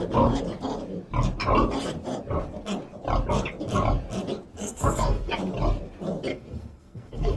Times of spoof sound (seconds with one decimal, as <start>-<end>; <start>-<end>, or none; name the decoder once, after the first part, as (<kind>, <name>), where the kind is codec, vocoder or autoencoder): 4.6-5.3 (codec, SNAC); 6.3-7.4